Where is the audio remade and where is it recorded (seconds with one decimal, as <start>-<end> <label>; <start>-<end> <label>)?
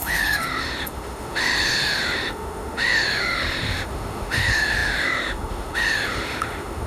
0.0-6.9 remade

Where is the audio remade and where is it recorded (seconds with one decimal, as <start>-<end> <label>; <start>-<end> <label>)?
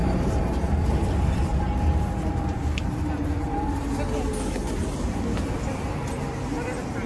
0.0-0.7 remade; 0.7-7.1 recorded